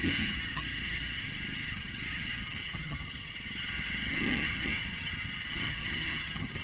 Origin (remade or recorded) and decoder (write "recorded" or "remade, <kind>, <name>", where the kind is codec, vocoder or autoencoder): remade, vocoder, HiFi-GAN